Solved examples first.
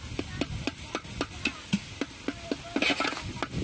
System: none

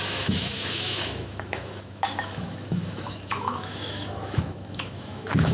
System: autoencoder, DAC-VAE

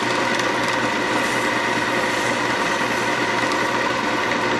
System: none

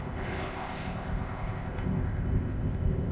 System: codec, ZipCodec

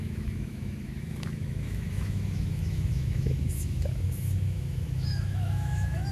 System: autoencoder, DAC-VAE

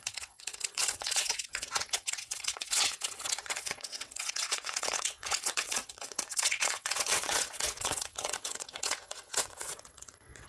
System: vocoder, WaveNeXt